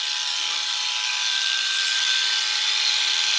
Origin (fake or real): fake